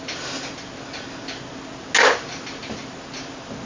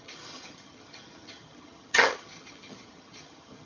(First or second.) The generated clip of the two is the second